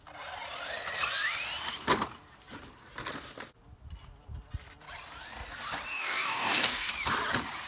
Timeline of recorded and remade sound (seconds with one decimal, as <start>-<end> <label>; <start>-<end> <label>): 0.0-5.9 recorded; 5.9-6.9 remade; 6.9-7.7 recorded